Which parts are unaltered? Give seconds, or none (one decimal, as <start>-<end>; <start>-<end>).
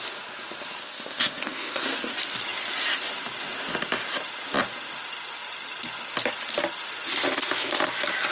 0.0-0.8; 1.8-8.3